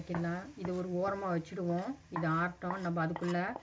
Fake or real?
real